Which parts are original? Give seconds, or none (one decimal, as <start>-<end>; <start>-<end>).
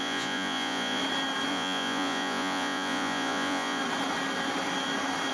1.0-1.5; 3.8-5.3